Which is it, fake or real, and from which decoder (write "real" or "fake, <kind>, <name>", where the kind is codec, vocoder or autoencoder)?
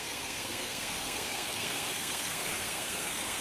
fake, codec, SNAC